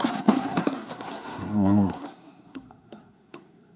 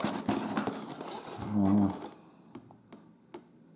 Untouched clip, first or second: second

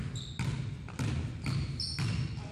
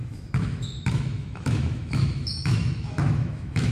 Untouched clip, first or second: first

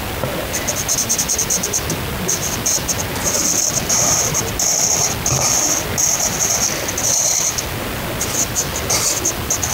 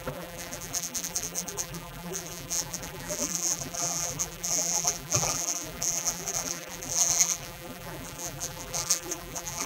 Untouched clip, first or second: first